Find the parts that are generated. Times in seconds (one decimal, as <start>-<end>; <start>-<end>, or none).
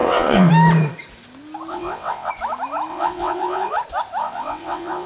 0.0-0.5; 1.7-2.3; 2.9-3.7; 4.2-5.1